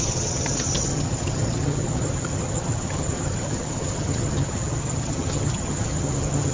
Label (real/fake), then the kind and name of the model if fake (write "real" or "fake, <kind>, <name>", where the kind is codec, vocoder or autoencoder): fake, vocoder, HiFi-GAN